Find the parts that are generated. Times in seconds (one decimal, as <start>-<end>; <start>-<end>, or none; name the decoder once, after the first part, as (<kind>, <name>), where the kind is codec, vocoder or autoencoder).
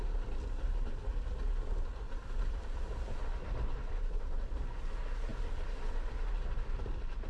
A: none